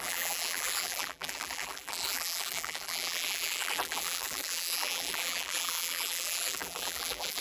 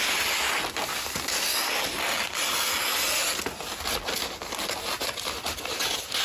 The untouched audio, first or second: second